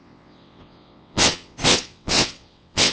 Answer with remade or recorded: remade